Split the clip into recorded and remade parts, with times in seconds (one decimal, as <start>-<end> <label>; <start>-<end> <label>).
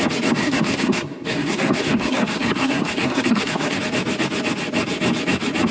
0.0-0.4 recorded; 0.4-3.8 remade; 3.8-5.7 recorded